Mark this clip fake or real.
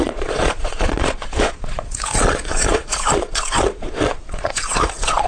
fake